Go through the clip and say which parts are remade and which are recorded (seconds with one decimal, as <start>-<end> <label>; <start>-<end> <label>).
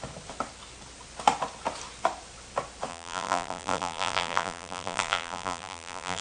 0.0-2.9 recorded; 2.9-6.2 remade